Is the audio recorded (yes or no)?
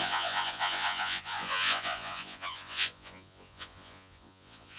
no